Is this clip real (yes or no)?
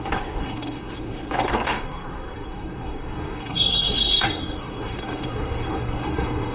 no